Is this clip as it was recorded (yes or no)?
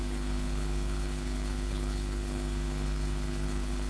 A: no